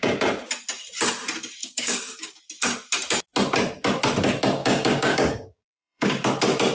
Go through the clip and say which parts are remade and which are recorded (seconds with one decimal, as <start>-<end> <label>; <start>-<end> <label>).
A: 0.0-1.6 recorded; 1.6-2.4 remade; 2.4-4.6 recorded; 4.6-6.3 remade; 6.3-6.7 recorded